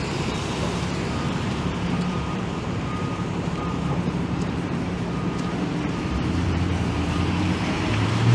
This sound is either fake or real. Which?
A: fake